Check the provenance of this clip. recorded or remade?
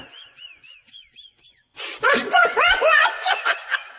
remade